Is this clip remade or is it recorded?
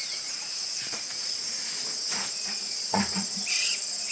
remade